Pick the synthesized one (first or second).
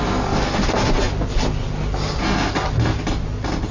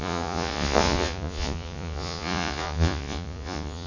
second